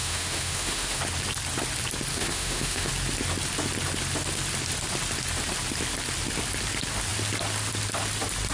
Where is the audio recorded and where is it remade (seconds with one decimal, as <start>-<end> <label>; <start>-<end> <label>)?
0.0-1.0 remade; 1.0-2.1 recorded; 2.1-2.9 remade; 2.9-8.5 recorded